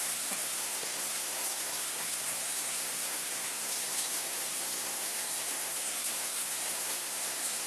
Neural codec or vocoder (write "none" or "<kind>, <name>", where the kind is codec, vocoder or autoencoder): codec, SNAC